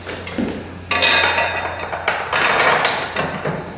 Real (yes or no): yes